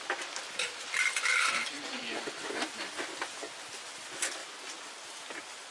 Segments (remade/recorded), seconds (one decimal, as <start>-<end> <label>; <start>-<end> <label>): 0.0-4.4 remade; 4.4-5.7 recorded